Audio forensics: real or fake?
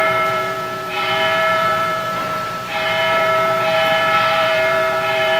fake